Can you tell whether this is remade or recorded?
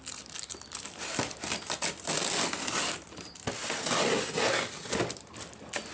recorded